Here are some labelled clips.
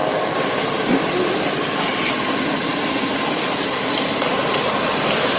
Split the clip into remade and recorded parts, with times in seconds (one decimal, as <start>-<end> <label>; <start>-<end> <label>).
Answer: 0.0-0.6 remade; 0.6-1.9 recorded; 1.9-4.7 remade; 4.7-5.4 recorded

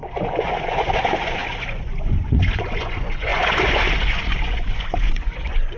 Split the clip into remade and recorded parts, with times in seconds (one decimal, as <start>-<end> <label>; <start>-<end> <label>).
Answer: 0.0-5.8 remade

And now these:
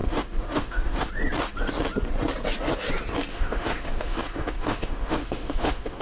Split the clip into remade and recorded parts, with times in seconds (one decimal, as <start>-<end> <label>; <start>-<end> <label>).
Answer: 0.0-1.1 remade; 1.1-3.3 recorded; 3.3-6.0 remade

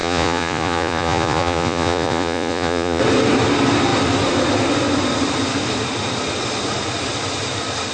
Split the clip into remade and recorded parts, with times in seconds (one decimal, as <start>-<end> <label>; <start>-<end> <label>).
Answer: 0.0-3.0 remade; 3.0-7.9 recorded

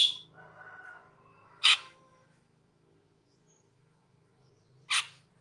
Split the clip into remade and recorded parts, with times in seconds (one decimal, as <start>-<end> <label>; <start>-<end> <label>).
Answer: 0.0-1.3 recorded; 1.3-4.5 remade; 4.5-5.4 recorded

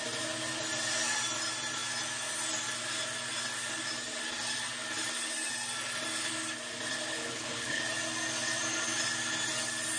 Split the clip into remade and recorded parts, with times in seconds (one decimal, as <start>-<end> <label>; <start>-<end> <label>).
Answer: 0.0-7.1 recorded; 7.1-7.8 remade; 7.8-10.0 recorded